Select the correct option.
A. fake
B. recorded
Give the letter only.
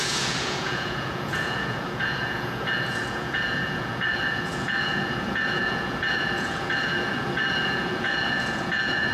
A